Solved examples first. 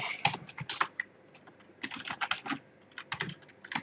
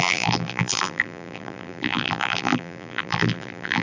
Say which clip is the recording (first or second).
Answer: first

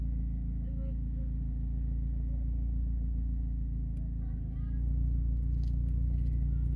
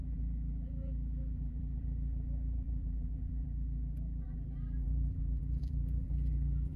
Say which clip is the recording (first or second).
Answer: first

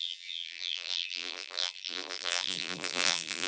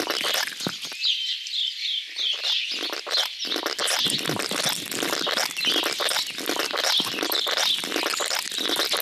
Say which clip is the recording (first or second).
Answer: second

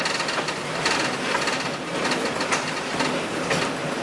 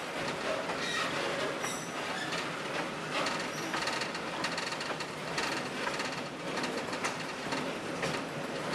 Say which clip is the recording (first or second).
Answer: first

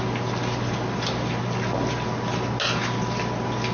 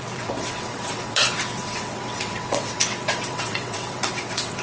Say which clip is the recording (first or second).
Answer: first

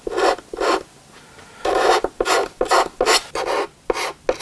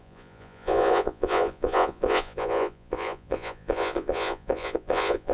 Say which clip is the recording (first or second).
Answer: first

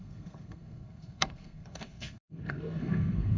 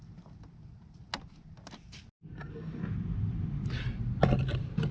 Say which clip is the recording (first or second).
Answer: second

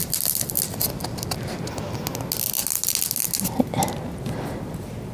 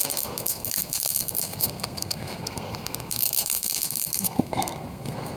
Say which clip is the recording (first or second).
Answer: first